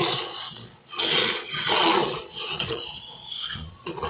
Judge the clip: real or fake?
fake